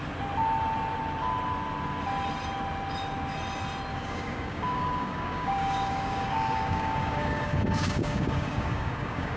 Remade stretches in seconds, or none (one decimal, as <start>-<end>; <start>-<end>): 3.9-9.4